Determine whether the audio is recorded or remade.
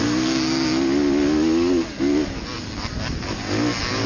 recorded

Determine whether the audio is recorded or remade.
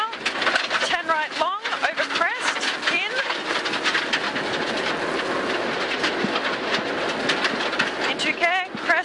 recorded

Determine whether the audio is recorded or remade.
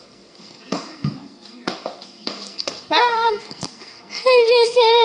remade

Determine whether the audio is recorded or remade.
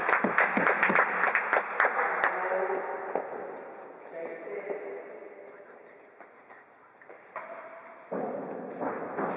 recorded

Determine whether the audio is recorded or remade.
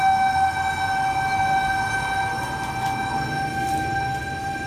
recorded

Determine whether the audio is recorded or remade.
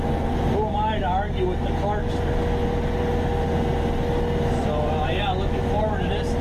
recorded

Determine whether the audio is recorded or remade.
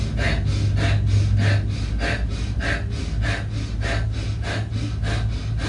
recorded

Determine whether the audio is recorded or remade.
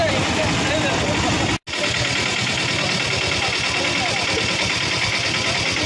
recorded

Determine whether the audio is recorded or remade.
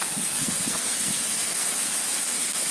remade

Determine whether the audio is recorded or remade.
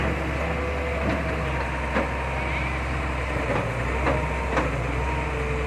recorded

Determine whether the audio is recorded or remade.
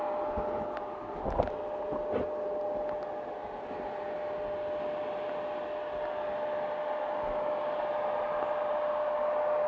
recorded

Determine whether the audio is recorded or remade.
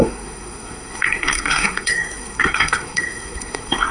remade